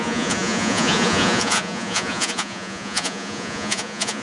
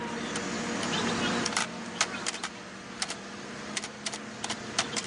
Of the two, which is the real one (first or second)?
second